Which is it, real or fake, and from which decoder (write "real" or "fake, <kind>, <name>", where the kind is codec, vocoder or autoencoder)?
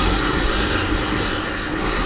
fake, codec, SNAC